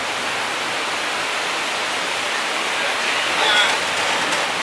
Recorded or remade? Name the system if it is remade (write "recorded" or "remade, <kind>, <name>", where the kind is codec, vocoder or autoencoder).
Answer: recorded